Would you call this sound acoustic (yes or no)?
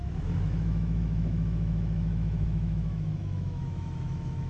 no